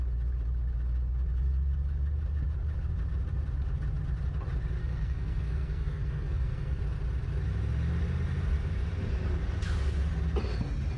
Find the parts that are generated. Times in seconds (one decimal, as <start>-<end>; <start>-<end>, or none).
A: 4.8-6.8